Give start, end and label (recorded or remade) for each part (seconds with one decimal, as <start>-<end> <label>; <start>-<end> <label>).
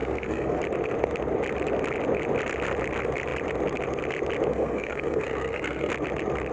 0.0-0.6 remade; 0.6-4.5 recorded; 4.5-5.9 remade; 5.9-6.5 recorded